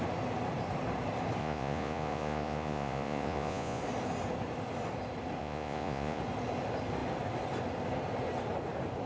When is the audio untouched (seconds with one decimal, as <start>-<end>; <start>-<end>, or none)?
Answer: 0.0-1.4; 3.8-5.4; 6.2-9.1